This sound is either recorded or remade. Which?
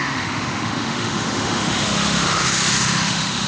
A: remade